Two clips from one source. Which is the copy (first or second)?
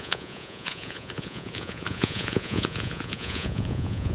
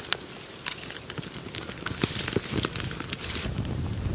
first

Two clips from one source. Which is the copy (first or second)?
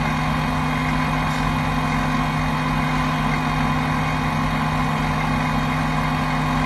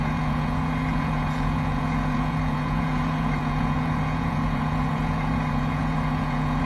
second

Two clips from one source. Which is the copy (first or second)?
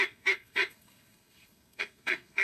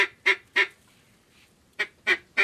first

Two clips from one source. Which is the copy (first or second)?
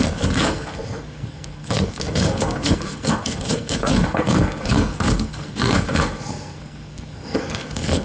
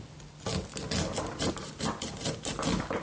first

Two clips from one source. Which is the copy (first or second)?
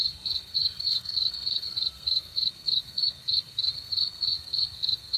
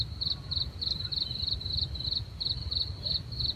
first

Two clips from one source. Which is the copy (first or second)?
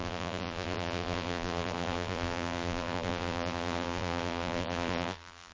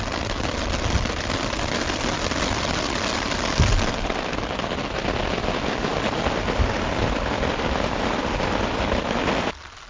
first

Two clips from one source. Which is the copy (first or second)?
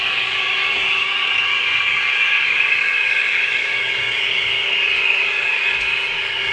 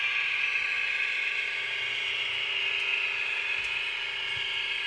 first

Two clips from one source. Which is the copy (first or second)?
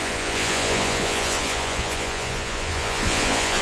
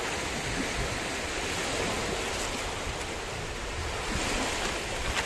first